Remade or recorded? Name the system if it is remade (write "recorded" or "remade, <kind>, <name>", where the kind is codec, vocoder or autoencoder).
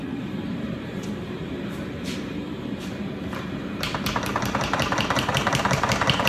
remade, vocoder, BigVGAN v2